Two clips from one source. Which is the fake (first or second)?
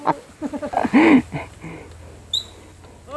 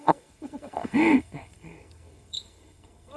second